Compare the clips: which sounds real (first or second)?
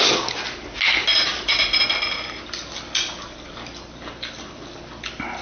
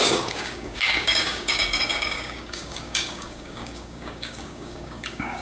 first